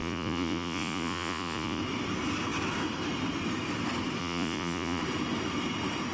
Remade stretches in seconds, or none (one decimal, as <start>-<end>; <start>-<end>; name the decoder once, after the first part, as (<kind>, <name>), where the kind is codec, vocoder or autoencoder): 0.0-1.8 (vocoder, Vocos); 4.2-5.0